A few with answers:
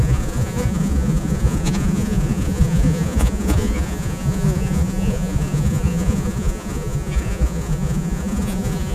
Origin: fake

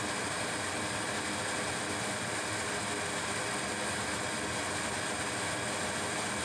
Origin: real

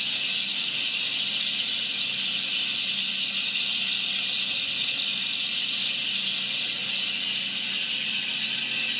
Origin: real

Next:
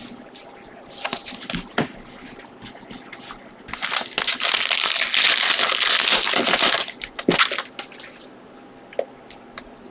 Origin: real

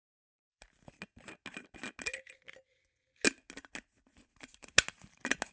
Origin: real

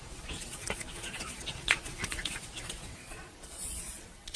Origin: fake